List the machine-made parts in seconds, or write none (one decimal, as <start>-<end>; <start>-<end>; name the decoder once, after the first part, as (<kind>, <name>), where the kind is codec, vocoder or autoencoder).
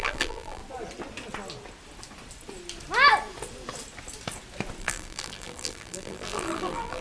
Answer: 0.0-0.6 (vocoder, BigVGAN v2); 4.8-7.0